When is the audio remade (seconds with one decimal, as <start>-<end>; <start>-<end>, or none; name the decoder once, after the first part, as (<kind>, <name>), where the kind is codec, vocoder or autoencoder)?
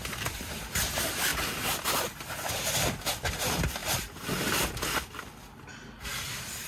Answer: none